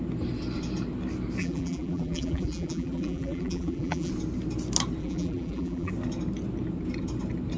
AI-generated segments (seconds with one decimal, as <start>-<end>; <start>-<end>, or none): 1.4-4.1; 5.0-5.9